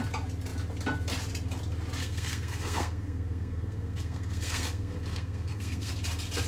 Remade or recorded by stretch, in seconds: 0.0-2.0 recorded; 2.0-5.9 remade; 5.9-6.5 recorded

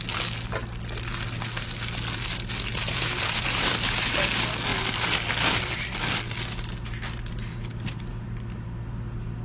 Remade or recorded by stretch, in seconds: 0.0-2.7 recorded; 2.7-3.7 remade; 3.7-9.4 recorded

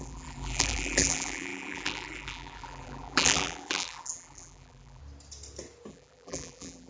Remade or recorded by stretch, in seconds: 0.0-5.0 remade; 5.0-5.9 recorded; 5.9-6.9 remade

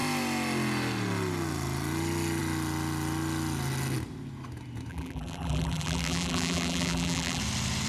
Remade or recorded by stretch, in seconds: 0.0-4.9 recorded; 4.9-7.4 remade; 7.4-7.9 recorded

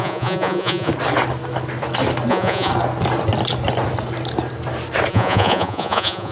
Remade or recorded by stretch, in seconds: 0.0-0.9 remade; 0.9-2.3 recorded; 2.3-2.7 remade; 2.7-5.1 recorded; 5.1-6.3 remade